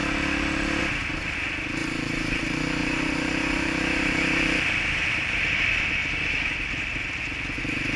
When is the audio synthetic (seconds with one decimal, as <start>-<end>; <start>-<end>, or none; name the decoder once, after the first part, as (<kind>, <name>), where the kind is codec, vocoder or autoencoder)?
1.8-2.4 (vocoder, BigVGAN v2); 2.8-5.4